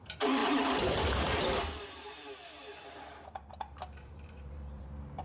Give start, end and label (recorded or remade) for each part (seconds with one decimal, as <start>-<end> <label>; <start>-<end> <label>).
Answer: 0.0-5.2 remade